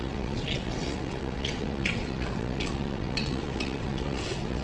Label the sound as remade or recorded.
remade